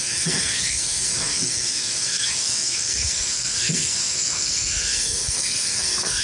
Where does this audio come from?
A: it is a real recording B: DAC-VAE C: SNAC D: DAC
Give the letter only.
C